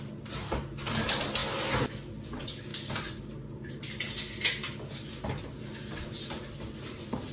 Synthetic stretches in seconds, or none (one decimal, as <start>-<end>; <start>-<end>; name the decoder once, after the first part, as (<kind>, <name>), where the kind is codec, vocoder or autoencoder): 2.7-3.2 (vocoder, BigVGAN v2)